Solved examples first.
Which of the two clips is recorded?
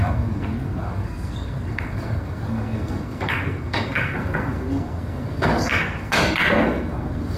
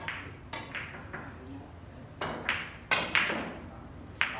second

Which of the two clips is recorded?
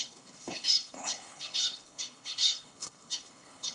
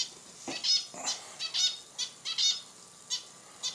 second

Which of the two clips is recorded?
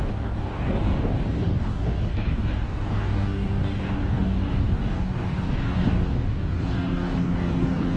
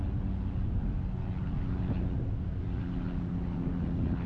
second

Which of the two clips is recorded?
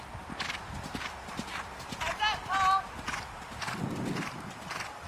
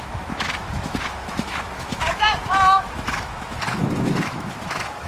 first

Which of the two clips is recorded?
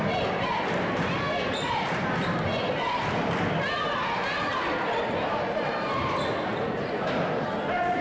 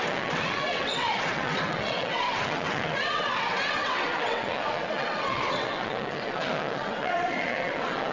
first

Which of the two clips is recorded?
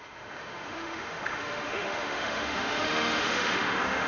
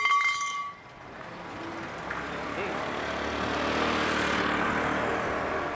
second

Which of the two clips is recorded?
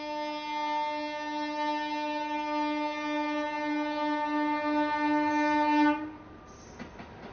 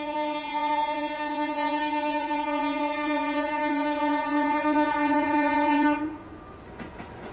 first